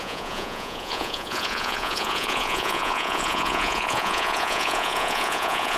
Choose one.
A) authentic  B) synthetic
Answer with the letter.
B